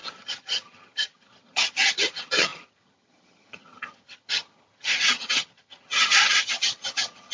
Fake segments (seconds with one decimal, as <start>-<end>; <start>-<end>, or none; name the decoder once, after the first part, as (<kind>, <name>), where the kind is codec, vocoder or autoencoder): 0.0-7.3 (vocoder, HiFi-GAN)